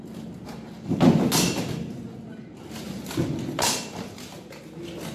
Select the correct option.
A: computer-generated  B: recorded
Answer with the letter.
B